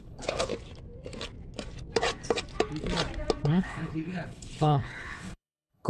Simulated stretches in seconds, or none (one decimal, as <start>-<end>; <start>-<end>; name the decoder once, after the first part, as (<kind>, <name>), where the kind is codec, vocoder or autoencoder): 0.0-0.5 (codec, HILCodec); 3.5-5.9